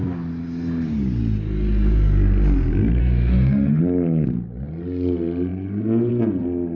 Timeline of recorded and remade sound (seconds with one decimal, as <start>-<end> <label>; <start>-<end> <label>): 0.0-3.0 recorded; 3.0-3.8 remade; 3.8-6.8 recorded